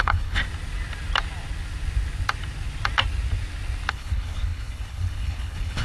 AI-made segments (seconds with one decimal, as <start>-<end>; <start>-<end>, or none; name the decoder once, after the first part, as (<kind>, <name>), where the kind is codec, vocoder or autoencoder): 0.0-0.4 (codec, HILCodec); 3.9-5.8